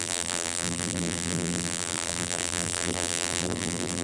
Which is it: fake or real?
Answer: fake